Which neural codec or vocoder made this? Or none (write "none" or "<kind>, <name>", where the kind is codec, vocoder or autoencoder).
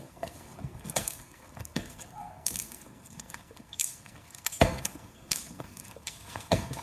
codec, SNAC